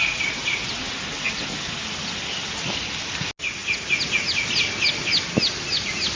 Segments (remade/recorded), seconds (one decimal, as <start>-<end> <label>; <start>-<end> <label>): 0.0-6.2 recorded